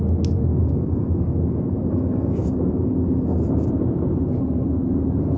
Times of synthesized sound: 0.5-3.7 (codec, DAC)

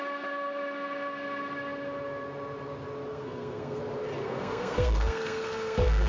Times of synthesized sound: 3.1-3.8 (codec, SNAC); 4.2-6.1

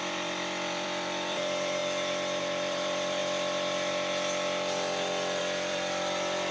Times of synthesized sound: 0.0-1.8 (vocoder, BigVGAN v2); 2.4-3.2; 5.4-6.5